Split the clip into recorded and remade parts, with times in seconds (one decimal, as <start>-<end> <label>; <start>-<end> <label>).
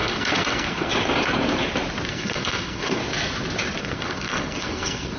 0.0-0.9 remade; 0.9-2.1 recorded; 2.1-3.0 remade; 3.0-3.8 recorded; 3.8-5.2 remade